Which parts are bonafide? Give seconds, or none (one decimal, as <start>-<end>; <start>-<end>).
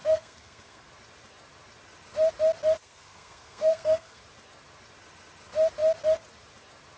0.9-2.8; 4.2-7.0